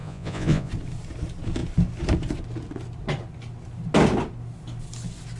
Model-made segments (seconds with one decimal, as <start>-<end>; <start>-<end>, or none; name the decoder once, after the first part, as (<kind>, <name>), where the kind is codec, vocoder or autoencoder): 0.0-0.7 (vocoder, Vocos)